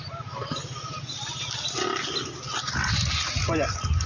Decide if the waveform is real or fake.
real